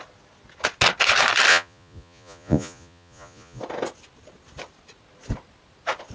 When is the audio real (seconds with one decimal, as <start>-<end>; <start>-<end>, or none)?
0.0-1.5; 3.6-6.1